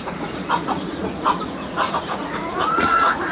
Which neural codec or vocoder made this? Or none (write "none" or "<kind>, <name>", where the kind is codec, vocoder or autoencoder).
vocoder, Vocos